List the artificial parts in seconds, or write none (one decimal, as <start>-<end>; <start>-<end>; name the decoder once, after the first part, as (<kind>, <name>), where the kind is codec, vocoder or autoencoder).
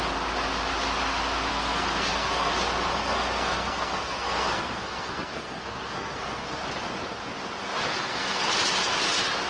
1.5-2.5 (codec, SNAC); 2.9-6.6; 7.9-8.4